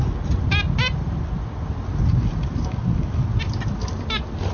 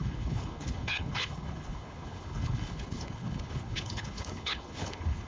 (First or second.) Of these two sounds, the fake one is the second